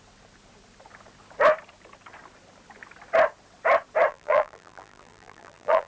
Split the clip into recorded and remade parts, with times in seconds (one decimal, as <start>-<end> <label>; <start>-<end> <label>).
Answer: 0.0-4.1 recorded; 4.1-5.9 remade